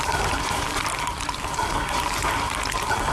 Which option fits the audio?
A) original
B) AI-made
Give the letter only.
A